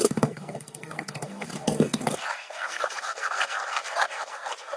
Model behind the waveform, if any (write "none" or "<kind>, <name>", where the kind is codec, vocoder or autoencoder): codec, SNAC